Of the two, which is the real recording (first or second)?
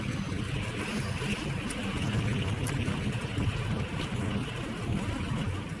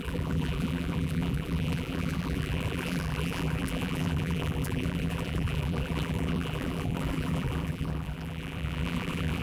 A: first